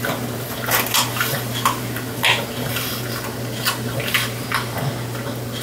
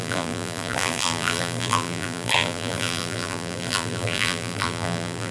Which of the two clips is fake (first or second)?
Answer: second